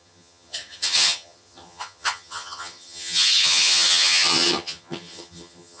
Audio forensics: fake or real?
fake